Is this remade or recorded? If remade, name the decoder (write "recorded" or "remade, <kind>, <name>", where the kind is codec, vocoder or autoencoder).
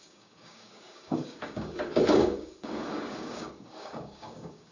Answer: remade, codec, DAC